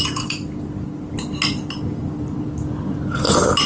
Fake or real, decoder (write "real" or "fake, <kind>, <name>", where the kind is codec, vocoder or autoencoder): real